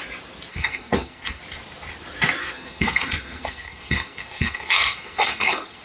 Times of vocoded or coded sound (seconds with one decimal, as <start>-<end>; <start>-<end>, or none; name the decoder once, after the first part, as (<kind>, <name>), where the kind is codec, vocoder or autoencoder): 0.5-1.4 (codec, SNAC); 2.4-5.8